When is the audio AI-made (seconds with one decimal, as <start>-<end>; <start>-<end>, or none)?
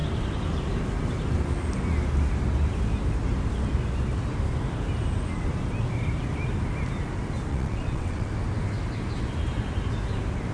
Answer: 7.5-8.3